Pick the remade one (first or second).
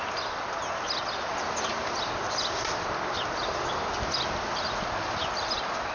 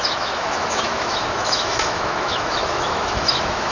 second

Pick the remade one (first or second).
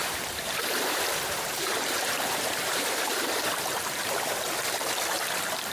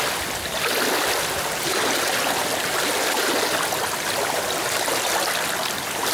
first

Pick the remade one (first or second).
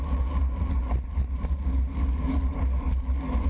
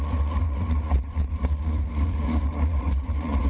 second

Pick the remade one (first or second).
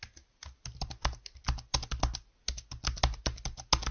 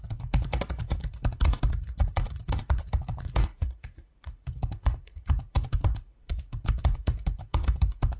second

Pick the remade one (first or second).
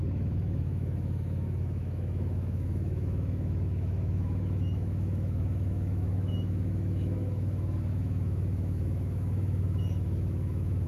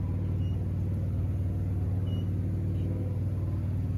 first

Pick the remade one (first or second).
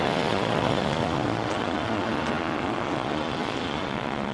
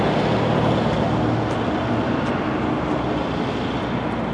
first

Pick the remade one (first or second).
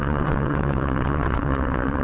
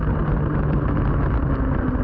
first